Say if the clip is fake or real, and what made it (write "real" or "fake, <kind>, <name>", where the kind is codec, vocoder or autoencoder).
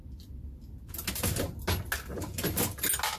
real